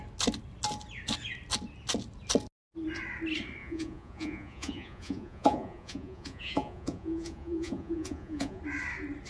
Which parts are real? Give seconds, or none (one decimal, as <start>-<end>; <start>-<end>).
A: 0.0-3.6; 8.6-9.3